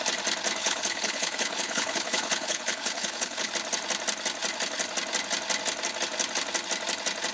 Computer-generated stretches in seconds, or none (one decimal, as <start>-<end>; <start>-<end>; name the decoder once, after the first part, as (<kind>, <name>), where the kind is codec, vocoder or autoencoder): 0.6-3.5 (codec, HILCodec)